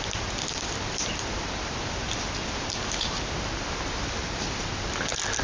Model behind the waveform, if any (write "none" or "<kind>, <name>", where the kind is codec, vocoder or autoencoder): vocoder, BigVGAN v2